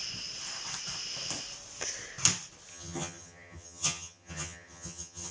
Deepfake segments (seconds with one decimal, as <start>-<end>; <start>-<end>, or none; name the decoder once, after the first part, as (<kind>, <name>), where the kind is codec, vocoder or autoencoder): 2.7-5.3 (vocoder, HiFi-GAN)